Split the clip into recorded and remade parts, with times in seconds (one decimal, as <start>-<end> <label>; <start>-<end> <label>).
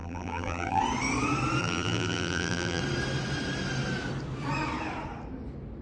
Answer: 0.0-0.8 remade; 0.8-1.6 recorded; 1.6-2.8 remade; 2.8-5.8 recorded